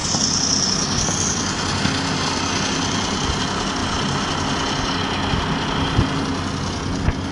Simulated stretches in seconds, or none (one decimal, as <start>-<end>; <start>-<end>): none